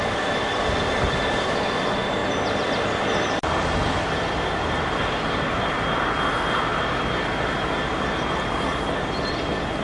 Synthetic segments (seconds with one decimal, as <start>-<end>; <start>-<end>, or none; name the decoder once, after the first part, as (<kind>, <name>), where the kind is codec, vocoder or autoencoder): none